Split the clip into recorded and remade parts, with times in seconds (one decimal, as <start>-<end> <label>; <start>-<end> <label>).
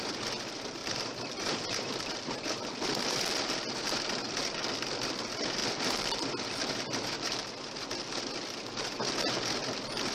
0.0-0.8 recorded; 0.8-2.6 remade; 2.6-10.1 recorded